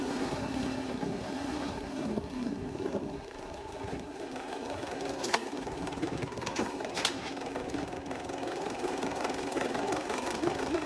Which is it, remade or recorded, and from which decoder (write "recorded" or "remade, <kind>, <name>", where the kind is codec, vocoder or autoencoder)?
remade, codec, SNAC